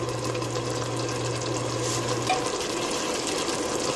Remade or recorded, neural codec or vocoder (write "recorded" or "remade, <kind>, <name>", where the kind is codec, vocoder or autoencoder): recorded